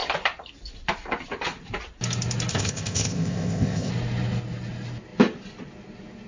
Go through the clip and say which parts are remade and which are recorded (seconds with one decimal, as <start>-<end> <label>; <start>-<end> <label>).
0.0-2.5 recorded; 2.5-3.9 remade; 3.9-6.3 recorded